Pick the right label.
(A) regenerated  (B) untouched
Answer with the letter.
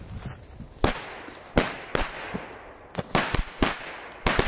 B